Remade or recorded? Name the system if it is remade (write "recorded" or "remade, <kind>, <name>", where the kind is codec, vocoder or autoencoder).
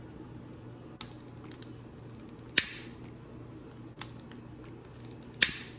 recorded